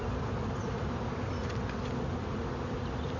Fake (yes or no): no